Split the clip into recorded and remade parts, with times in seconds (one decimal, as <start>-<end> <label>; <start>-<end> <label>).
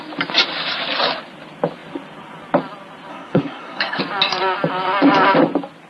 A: 0.0-3.1 recorded; 3.1-4.0 remade; 4.0-5.9 recorded